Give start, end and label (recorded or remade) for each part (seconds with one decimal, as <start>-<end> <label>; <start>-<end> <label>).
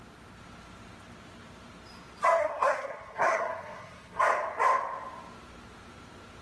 0.0-2.4 recorded; 2.4-4.2 remade; 4.2-6.4 recorded